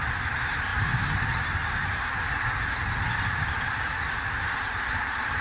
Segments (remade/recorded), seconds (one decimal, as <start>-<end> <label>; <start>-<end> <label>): 0.0-0.7 remade; 0.7-2.8 recorded; 2.8-5.4 remade